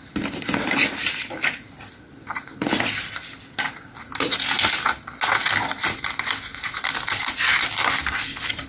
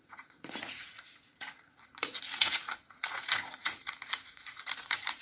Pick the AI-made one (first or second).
second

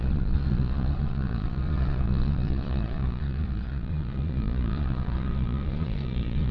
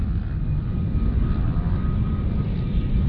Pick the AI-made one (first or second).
first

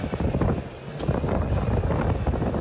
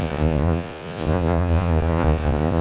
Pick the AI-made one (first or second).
second